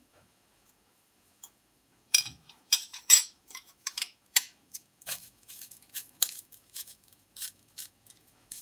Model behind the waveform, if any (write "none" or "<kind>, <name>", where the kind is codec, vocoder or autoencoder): autoencoder, DAC-VAE